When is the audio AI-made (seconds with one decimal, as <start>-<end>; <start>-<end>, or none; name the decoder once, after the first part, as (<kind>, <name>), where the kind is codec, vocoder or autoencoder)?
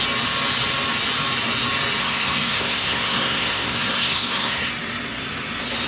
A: 2.0-4.7 (codec, SNAC)